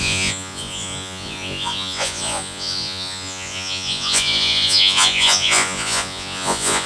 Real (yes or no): no